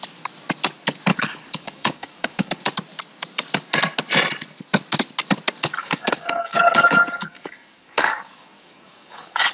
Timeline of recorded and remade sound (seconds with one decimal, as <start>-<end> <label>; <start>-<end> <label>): 0.0-1.1 recorded; 1.1-2.6 remade; 2.6-5.8 recorded; 5.8-9.5 remade